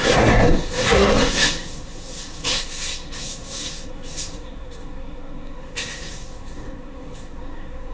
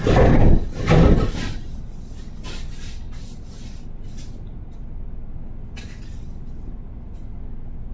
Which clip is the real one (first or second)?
second